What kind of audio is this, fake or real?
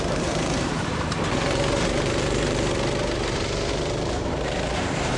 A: fake